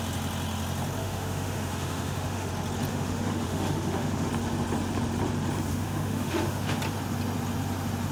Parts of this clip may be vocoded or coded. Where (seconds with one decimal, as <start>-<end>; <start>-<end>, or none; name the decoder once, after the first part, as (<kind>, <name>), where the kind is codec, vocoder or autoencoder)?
1.0-2.5 (autoencoder, DAC-VAE); 2.9-4.3; 5.7-6.8